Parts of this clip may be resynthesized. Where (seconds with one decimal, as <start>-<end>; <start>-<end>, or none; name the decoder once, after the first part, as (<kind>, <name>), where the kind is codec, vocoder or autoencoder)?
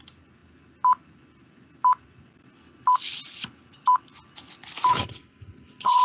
4.9-6.0 (codec, HILCodec)